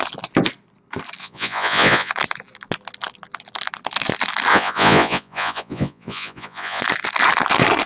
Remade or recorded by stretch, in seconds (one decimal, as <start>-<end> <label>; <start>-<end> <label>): 0.0-1.2 recorded; 1.2-2.1 remade; 2.1-4.5 recorded; 4.5-6.8 remade; 6.8-7.9 recorded